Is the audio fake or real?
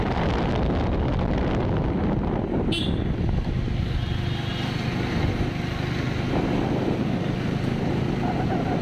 real